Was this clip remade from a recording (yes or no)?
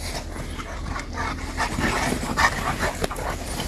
no